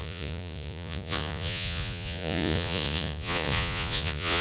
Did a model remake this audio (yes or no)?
yes